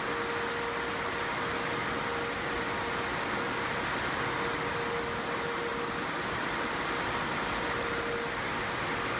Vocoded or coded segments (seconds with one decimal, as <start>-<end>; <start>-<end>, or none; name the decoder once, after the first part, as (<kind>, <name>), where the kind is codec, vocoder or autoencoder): none